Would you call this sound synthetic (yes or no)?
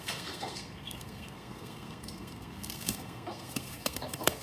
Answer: yes